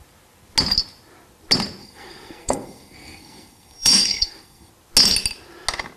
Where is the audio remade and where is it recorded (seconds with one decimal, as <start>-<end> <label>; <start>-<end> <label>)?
0.0-1.8 recorded; 1.8-4.7 remade; 4.7-6.0 recorded